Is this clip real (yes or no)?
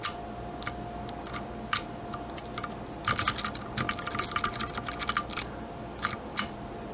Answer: yes